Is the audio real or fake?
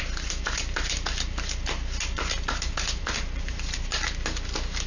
real